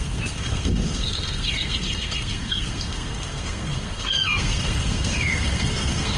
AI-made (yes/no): yes